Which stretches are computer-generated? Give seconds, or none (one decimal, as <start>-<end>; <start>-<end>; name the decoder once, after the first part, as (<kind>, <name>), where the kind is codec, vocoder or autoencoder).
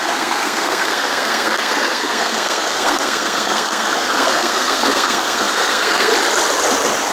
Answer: 0.0-6.1 (codec, SNAC)